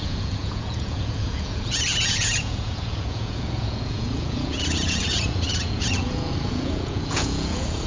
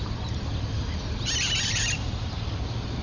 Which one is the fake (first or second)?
first